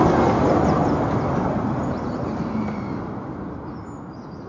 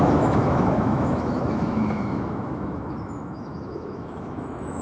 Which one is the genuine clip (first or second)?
first